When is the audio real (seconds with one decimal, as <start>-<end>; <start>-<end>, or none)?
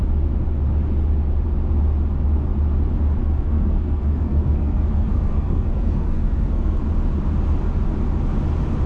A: 0.0-3.2; 6.8-8.9